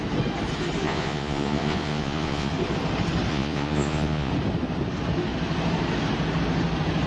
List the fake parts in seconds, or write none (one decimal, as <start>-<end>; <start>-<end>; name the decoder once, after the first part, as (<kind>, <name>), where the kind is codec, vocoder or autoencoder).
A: 0.8-2.5 (vocoder, Vocos); 3.3-4.3